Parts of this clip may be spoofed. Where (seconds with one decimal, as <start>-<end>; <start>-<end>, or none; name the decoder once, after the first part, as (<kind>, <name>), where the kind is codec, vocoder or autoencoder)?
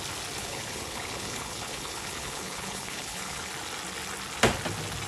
0.4-3.5 (codec, HILCodec)